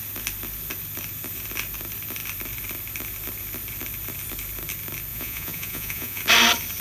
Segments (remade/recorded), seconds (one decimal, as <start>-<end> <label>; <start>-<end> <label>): 0.0-5.1 recorded; 5.1-6.2 remade; 6.2-6.8 recorded